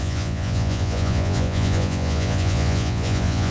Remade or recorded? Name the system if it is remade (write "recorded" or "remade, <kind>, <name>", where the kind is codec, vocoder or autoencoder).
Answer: remade, vocoder, Vocos